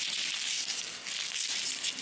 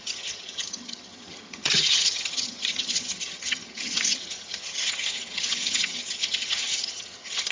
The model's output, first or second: second